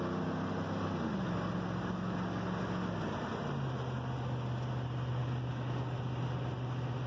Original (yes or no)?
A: yes